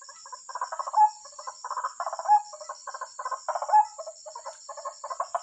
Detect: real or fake real